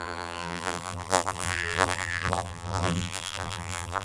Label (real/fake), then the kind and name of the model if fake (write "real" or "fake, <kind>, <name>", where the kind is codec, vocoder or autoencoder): fake, vocoder, BigVGAN v2